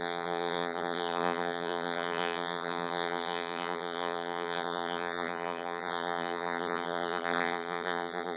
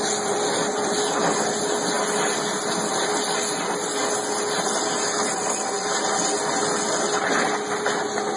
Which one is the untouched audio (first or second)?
second